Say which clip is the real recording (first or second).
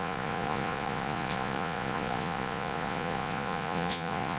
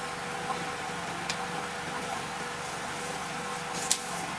second